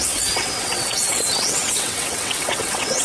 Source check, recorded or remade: remade